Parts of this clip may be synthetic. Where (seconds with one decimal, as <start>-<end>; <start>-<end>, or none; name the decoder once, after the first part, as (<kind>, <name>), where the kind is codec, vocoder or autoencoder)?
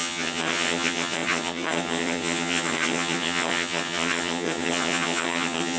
0.0-5.8 (vocoder, HiFi-GAN)